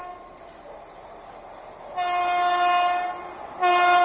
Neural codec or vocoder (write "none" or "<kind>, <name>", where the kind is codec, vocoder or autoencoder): none